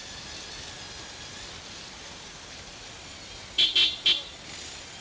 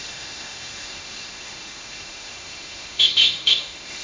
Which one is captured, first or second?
first